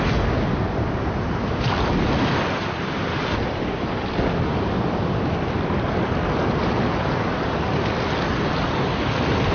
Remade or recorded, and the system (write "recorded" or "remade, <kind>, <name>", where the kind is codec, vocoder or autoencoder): recorded